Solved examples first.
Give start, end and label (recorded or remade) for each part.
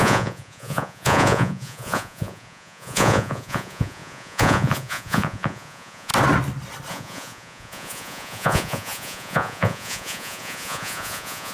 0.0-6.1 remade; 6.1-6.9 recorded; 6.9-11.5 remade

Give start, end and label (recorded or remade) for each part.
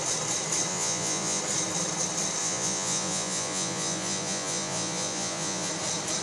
0.0-0.7 recorded; 0.7-1.4 remade; 1.4-2.4 recorded; 2.4-5.7 remade; 5.7-6.2 recorded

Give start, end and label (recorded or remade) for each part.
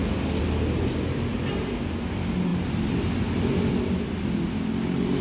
0.0-5.2 recorded